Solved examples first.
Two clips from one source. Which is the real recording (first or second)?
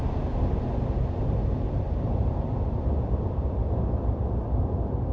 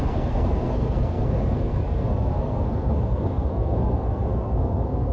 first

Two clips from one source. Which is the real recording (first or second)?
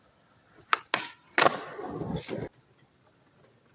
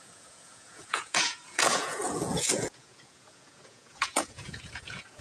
first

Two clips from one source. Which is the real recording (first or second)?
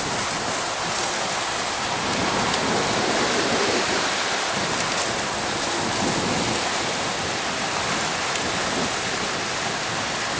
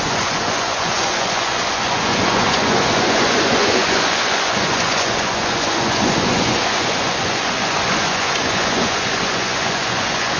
first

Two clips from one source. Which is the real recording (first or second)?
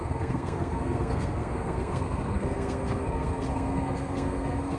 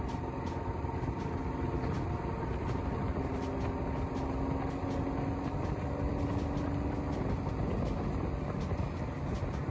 second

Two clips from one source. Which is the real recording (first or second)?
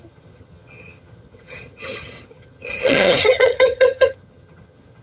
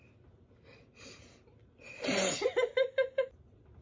second